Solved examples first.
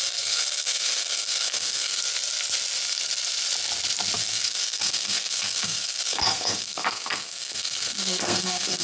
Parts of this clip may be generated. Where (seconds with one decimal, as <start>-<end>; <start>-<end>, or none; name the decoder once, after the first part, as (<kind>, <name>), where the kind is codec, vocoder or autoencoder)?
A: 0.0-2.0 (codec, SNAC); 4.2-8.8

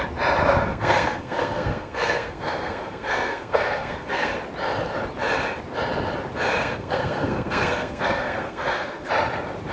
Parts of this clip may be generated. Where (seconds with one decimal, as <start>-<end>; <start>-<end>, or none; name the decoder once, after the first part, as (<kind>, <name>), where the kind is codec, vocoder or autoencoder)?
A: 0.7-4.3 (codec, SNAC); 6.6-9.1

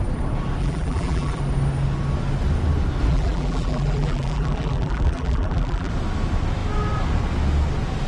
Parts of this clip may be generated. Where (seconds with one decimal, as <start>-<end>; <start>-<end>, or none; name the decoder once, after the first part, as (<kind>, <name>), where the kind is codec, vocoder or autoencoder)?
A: 0.6-1.4 (vocoder, BigVGAN v2); 3.1-5.9